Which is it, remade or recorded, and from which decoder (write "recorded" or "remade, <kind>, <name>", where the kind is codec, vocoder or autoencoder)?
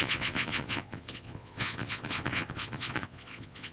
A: remade, vocoder, Vocos